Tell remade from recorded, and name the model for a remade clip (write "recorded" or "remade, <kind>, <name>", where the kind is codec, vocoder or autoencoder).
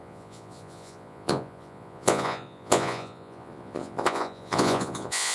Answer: remade, vocoder, Vocos